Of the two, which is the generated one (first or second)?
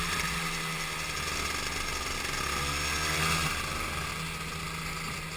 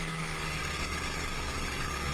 second